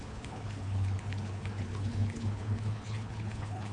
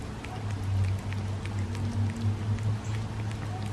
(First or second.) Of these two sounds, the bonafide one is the second